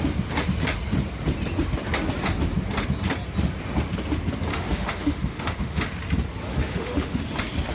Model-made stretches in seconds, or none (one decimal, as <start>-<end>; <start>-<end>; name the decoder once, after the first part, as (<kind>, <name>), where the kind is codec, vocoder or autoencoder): 4.5-5.8 (autoencoder, DAC-VAE); 6.5-7.2